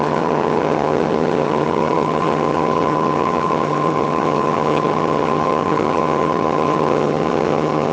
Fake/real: fake